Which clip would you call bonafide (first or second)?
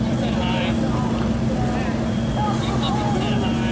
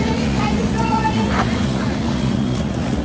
first